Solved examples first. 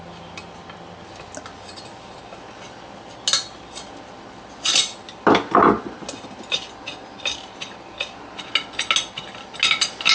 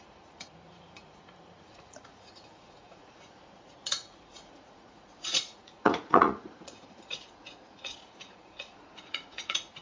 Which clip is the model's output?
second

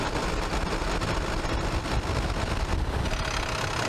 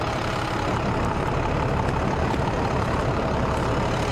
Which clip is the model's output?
second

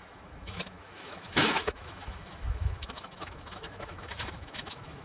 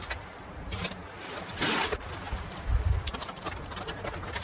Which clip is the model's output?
first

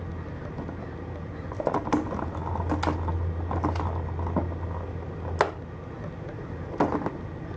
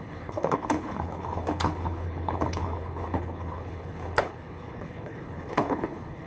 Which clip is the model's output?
second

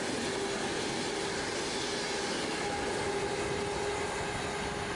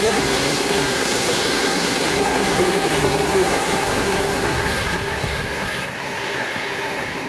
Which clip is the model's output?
second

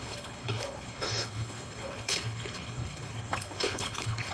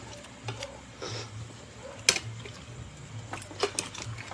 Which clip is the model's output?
first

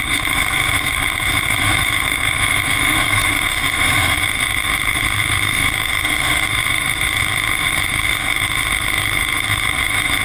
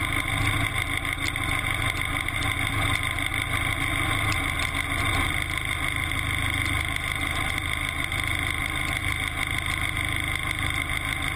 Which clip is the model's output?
first